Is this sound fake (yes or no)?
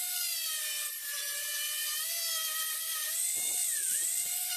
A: no